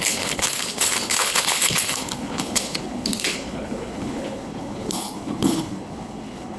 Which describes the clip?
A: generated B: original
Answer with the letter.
A